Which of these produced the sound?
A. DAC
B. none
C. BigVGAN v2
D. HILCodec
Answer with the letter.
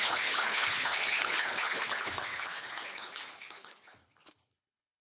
D